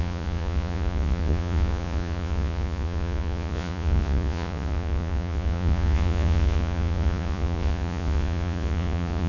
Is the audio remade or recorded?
remade